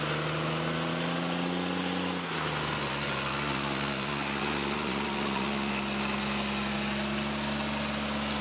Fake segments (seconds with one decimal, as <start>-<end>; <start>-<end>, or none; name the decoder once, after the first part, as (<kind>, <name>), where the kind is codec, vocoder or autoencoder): 2.8-5.7 (vocoder, Vocos)